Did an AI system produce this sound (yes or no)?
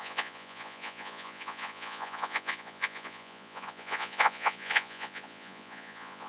yes